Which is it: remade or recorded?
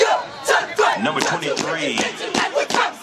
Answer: recorded